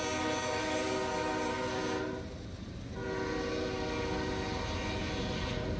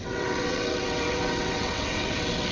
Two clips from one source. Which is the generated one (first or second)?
second